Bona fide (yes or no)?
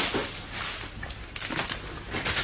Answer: yes